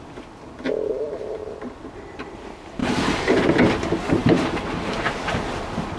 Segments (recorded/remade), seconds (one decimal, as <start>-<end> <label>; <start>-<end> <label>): 0.0-2.8 recorded; 2.8-3.5 remade; 3.5-4.2 recorded; 4.2-5.0 remade; 5.0-6.0 recorded